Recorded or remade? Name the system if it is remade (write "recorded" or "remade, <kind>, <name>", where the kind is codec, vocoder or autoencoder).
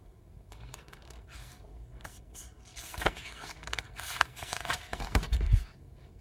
remade, codec, SNAC